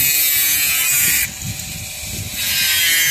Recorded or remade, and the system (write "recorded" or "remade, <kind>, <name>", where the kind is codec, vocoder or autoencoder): recorded